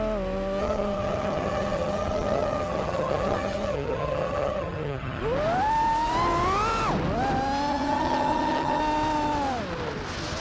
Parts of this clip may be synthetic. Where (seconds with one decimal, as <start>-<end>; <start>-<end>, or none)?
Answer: 0.6-5.2; 7.7-8.8

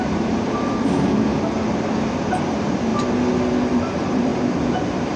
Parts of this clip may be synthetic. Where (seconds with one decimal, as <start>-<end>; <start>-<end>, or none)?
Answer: 0.0-1.3; 2.4-2.9; 3.7-4.3

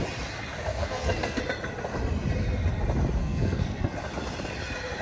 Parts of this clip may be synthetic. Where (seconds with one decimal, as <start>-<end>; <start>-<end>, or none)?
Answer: 0.7-1.4; 3.2-4.0

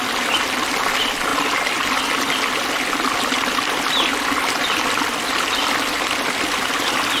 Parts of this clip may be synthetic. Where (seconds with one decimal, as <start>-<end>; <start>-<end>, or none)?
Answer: none

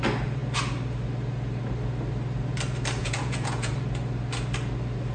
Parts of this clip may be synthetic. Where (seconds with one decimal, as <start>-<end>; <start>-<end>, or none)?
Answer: 3.0-3.7

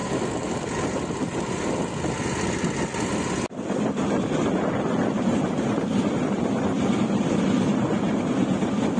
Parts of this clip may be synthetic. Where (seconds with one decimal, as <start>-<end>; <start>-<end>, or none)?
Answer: none

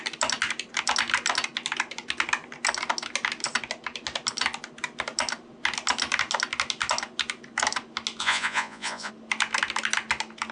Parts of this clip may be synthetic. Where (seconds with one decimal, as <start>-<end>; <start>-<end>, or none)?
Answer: 8.2-9.1